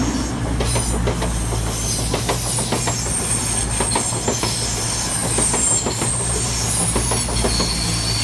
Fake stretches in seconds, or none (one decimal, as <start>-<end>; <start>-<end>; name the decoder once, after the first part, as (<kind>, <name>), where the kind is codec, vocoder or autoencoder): none

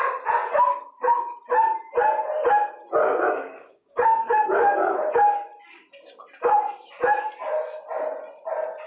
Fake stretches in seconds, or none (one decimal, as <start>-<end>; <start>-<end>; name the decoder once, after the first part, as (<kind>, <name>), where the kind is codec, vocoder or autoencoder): 3.0-5.1 (codec, DAC)

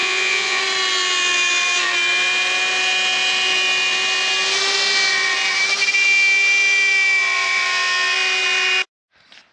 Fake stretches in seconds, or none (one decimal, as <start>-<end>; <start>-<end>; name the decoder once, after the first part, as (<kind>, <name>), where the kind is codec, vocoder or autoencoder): 0.0-0.6 (vocoder, Vocos)

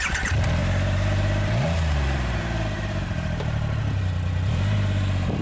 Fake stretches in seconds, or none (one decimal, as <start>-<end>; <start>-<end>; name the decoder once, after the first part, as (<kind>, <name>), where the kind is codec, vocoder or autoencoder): 0.6-3.8 (vocoder, BigVGAN v2)

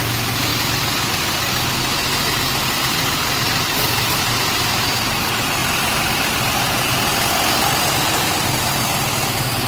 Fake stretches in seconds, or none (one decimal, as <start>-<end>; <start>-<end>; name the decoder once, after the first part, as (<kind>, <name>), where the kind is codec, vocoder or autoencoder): 2.6-4.9 (vocoder, BigVGAN v2); 5.6-6.7

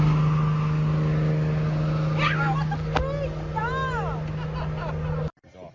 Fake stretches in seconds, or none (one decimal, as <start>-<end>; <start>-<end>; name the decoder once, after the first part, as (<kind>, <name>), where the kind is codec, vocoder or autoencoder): none

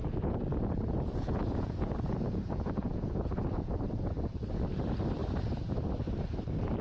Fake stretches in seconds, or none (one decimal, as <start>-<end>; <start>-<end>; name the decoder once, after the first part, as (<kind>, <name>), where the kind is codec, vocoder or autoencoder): 0.0-3.7 (vocoder, Vocos)

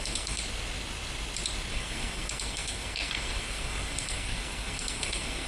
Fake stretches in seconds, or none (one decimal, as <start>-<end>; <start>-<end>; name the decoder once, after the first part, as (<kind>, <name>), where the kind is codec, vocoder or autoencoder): 0.0-0.4 (codec, SNAC); 1.7-5.5